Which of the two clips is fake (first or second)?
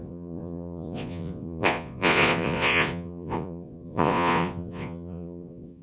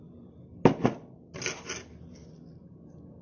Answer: first